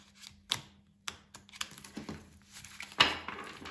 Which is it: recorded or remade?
recorded